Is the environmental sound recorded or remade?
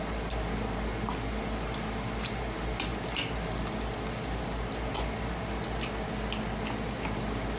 recorded